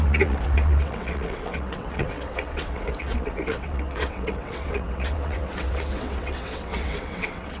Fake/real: fake